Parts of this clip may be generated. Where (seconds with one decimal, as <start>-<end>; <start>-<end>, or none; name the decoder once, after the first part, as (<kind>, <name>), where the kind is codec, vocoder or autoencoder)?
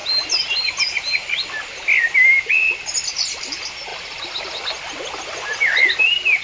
none